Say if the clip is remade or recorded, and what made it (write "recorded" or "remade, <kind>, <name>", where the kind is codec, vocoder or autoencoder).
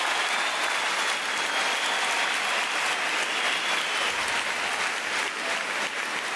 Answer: recorded